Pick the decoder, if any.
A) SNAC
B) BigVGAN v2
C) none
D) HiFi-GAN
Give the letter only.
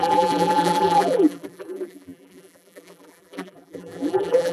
B